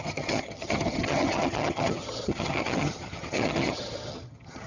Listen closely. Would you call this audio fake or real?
fake